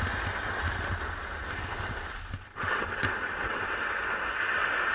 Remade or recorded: recorded